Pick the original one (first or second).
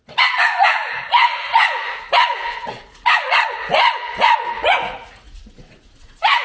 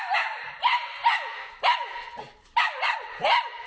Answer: second